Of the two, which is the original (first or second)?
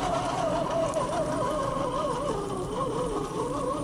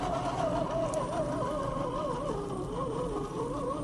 second